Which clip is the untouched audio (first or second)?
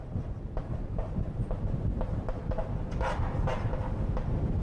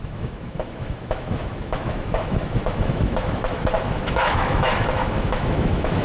first